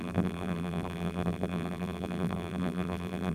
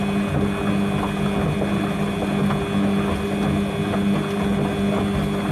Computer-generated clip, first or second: first